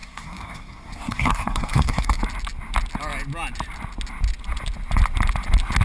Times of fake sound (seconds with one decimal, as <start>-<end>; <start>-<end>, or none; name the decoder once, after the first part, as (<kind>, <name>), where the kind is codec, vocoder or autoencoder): 0.0-2.2 (codec, SNAC)